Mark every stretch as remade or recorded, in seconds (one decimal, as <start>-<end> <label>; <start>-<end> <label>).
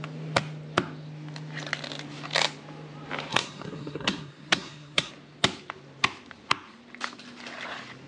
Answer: 0.0-3.3 recorded; 3.3-5.1 remade; 5.1-8.1 recorded